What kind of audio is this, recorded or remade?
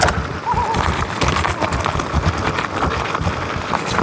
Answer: recorded